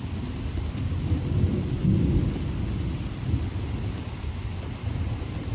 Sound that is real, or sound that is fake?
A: real